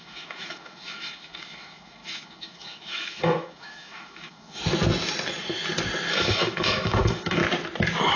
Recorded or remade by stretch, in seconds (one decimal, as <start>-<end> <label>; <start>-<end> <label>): 0.0-4.6 remade; 4.6-6.1 recorded; 6.1-7.4 remade; 7.4-8.2 recorded

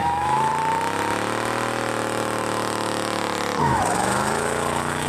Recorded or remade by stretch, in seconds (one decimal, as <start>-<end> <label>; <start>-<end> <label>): 0.0-0.5 remade; 0.5-3.6 recorded; 3.6-5.1 remade

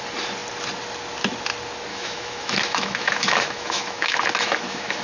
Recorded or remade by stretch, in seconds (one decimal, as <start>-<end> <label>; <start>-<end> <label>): 0.0-1.9 recorded; 1.9-5.0 remade

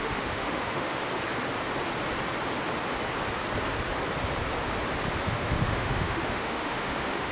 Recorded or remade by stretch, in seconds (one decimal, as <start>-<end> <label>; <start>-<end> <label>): 0.0-1.0 remade; 1.0-5.3 recorded; 5.3-7.3 remade

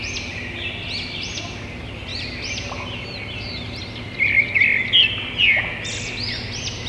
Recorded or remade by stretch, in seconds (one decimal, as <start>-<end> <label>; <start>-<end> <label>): 0.0-6.9 recorded